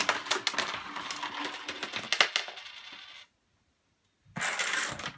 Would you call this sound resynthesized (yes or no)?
no